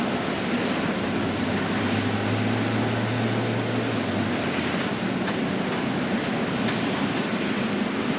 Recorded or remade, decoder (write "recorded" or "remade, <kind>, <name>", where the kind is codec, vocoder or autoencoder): recorded